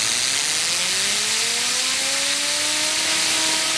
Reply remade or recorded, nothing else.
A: recorded